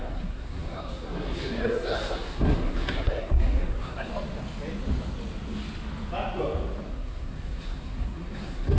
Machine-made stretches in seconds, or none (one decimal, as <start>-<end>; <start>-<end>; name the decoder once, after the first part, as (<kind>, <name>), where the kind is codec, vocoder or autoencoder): 0.0-4.1 (codec, SNAC); 6.9-8.8